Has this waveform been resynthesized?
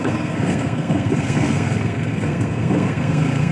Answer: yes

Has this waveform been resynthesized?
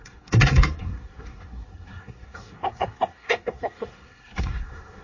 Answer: yes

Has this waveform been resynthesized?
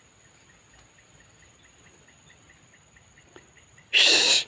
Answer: no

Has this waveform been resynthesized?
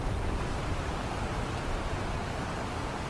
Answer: no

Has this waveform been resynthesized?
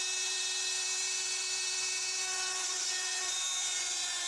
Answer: yes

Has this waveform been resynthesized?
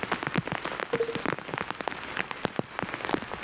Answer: no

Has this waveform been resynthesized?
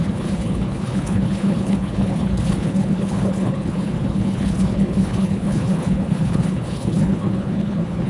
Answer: yes